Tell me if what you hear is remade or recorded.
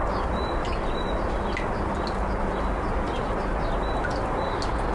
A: recorded